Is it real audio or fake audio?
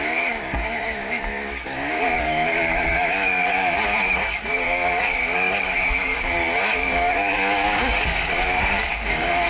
fake